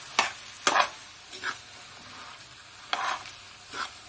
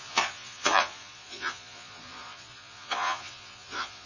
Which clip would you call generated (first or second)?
second